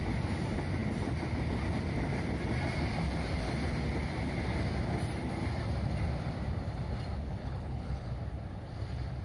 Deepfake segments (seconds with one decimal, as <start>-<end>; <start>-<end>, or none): 7.4-8.1